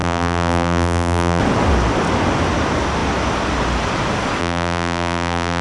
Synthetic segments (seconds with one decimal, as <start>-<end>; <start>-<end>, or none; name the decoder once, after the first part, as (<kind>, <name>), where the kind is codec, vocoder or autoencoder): 0.0-1.4 (vocoder, BigVGAN v2); 4.4-5.6